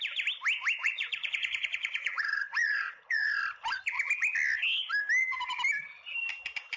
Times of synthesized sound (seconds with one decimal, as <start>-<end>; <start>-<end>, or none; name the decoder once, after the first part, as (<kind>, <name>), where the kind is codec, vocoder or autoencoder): 0.8-3.4 (vocoder, Vocos)